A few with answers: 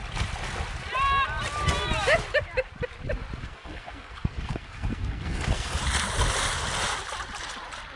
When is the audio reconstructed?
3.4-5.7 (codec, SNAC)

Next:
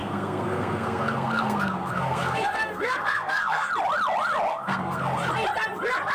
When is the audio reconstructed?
0.0-3.7 (codec, SNAC); 4.5-5.0